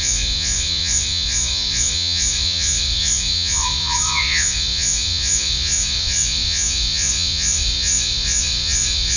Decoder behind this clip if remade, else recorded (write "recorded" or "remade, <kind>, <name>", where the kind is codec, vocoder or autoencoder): remade, vocoder, Vocos